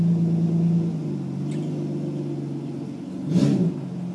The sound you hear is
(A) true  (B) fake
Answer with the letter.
A